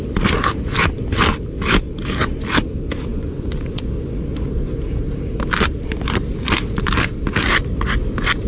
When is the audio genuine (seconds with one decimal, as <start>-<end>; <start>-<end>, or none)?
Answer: 0.0-3.1; 3.8-8.5